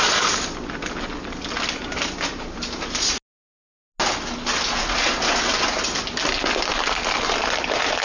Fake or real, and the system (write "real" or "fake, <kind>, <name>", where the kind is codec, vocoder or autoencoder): real